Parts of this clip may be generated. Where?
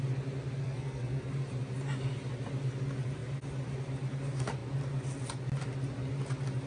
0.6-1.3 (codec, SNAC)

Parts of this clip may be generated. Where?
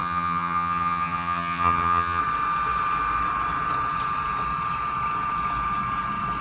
0.0-2.2 (vocoder, HiFi-GAN)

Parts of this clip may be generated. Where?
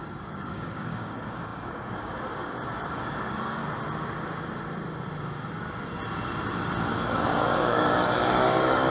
0.0-3.6 (codec, DAC); 6.9-8.9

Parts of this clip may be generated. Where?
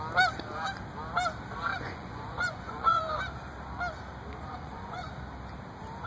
1.7-3.0 (vocoder, Vocos); 4.5-5.1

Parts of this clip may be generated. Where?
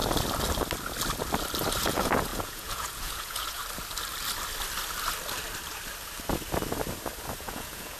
1.8-3.6 (vocoder, Vocos); 7.4-8.0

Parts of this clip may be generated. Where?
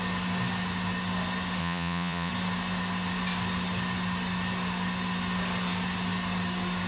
1.6-2.3 (vocoder, Vocos)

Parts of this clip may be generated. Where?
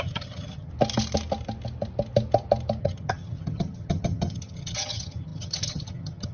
0.0-0.7 (vocoder, HiFi-GAN); 2.8-6.3